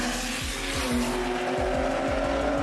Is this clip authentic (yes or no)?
yes